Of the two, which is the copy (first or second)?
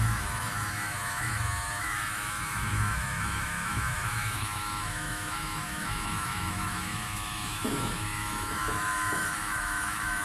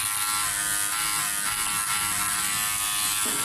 first